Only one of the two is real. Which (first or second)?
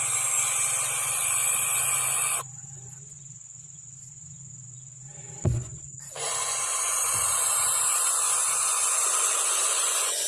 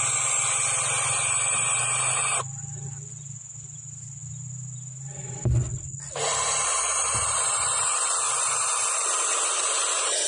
second